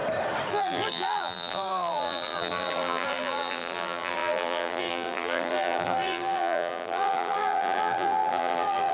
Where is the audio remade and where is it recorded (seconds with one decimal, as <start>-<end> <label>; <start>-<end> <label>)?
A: 0.0-0.5 recorded; 0.5-8.9 remade